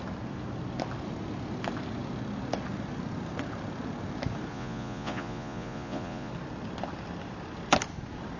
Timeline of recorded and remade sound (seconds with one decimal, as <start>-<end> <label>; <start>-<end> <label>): 0.0-4.5 recorded; 4.5-6.3 remade; 6.3-8.4 recorded